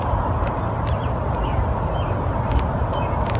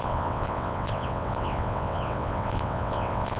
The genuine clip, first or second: first